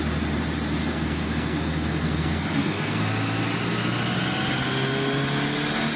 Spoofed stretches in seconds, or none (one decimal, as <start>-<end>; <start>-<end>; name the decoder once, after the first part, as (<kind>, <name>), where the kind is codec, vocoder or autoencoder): 0.8-3.0 (codec, SNAC)